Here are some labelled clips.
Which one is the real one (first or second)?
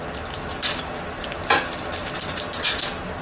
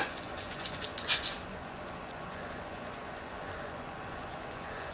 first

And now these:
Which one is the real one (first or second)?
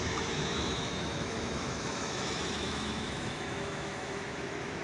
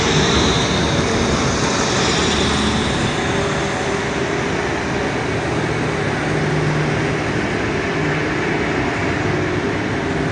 second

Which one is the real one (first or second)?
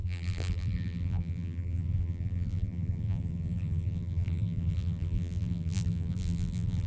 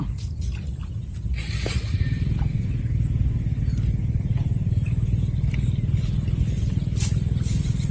second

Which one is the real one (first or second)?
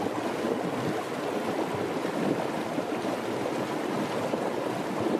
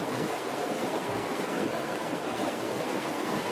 first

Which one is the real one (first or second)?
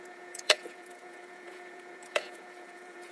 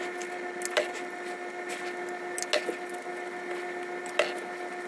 second